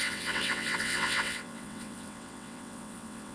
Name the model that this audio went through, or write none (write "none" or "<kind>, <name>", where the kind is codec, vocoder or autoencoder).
vocoder, WaveNeXt